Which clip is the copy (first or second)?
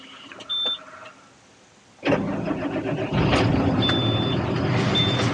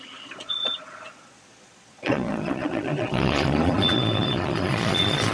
second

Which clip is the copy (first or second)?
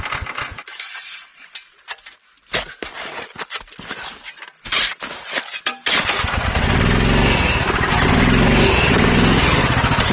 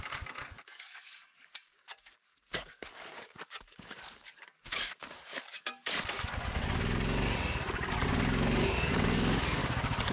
second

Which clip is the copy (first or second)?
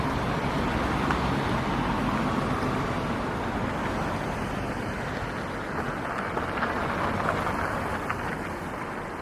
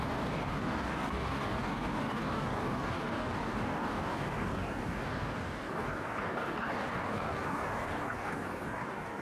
second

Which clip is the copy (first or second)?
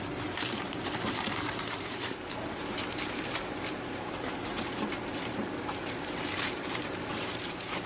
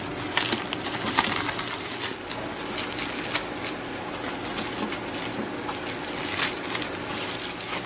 first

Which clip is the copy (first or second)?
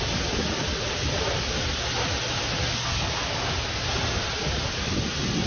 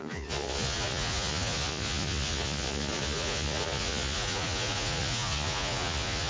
second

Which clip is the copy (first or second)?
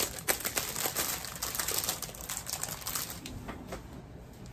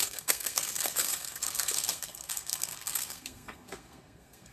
second